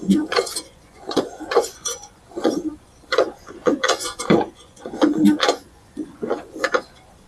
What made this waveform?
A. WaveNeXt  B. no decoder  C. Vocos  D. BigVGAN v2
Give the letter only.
C